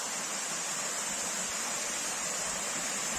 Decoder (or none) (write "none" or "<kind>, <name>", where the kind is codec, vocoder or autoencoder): none